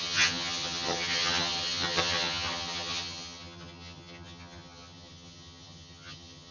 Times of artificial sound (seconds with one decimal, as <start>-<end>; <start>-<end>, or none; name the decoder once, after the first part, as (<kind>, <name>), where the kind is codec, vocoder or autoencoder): 0.0-6.5 (vocoder, HiFi-GAN)